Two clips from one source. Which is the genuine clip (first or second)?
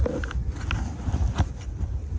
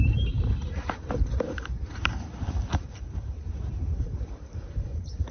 first